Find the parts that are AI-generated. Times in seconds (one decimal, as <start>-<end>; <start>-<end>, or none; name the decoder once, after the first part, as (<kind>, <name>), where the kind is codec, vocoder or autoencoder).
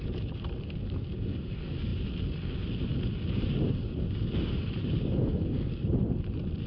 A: none